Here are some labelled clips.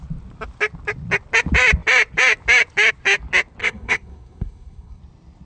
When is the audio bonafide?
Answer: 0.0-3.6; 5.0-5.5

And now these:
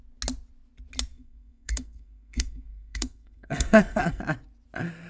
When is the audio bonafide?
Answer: 0.0-1.1; 4.2-5.1

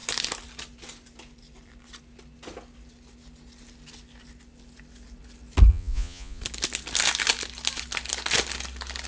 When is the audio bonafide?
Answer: 0.0-5.7; 6.4-9.1

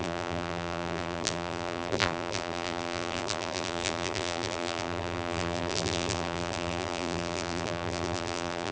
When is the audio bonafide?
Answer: none

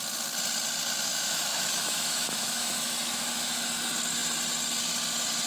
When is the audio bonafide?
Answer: 0.0-1.1; 3.7-5.5

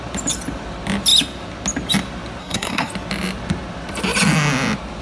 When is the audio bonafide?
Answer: 0.0-2.4; 2.9-5.0